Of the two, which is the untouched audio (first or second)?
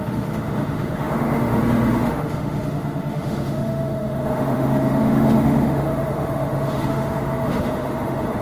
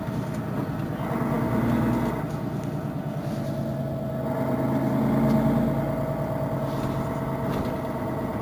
second